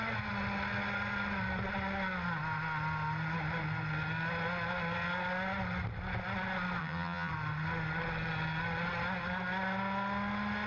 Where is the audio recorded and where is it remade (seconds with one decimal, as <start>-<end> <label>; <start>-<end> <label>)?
0.0-6.8 recorded; 6.8-7.3 remade; 7.3-10.7 recorded